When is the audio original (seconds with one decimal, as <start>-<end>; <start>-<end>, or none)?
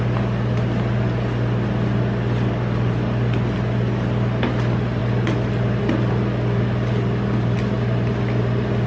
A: 0.0-8.9